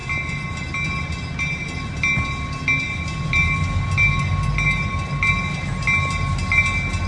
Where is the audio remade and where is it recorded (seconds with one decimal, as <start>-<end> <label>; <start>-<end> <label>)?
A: 0.0-7.1 recorded